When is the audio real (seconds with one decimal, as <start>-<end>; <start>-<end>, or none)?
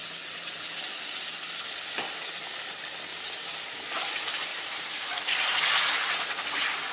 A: 0.0-3.1; 4.0-4.5; 5.2-6.9